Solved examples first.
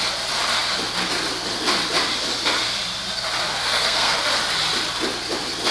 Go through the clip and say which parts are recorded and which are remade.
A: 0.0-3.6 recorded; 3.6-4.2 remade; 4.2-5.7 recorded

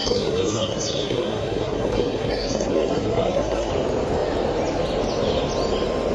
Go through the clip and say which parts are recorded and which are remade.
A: 0.0-3.7 remade; 3.7-6.1 recorded

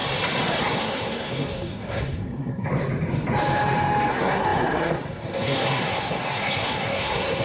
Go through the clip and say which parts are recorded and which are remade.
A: 0.0-0.6 recorded; 0.6-2.7 remade; 2.7-4.1 recorded; 4.1-7.4 remade

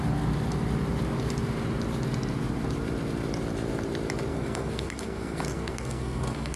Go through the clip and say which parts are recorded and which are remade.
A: 0.0-4.3 recorded; 4.3-6.6 remade

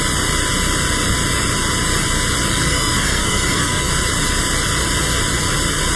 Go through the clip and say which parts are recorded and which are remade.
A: 0.0-2.5 recorded; 2.5-3.9 remade; 3.9-6.0 recorded

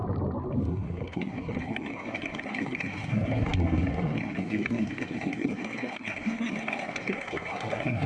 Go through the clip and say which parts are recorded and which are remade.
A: 0.0-0.6 recorded; 0.6-8.1 remade

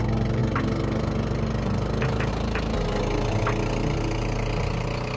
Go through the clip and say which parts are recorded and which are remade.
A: 0.0-5.2 recorded